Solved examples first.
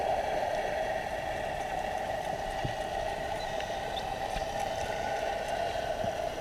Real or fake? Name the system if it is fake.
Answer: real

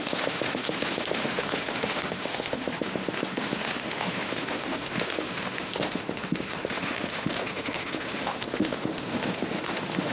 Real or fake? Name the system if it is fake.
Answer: fake, autoencoder, DAC-VAE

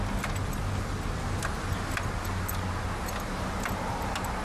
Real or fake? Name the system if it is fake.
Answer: real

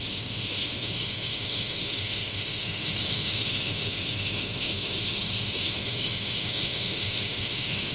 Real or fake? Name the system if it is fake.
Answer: fake, autoencoder, DAC-VAE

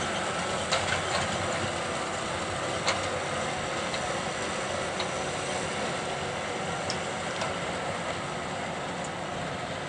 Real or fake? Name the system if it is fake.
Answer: real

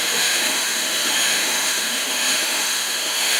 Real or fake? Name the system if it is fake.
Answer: fake, autoencoder, DAC-VAE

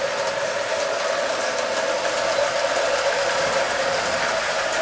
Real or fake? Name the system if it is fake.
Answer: real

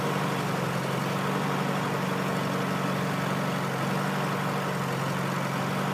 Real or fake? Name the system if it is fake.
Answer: real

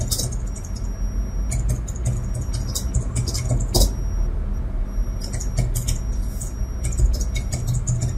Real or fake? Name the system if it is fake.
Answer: real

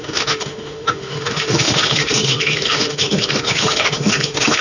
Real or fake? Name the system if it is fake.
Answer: fake, autoencoder, DAC-VAE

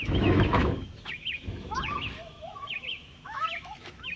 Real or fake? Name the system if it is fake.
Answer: fake, autoencoder, DAC-VAE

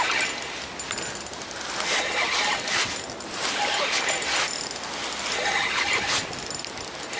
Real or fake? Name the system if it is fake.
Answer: real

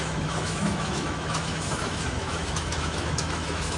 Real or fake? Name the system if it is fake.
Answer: fake, autoencoder, DAC-VAE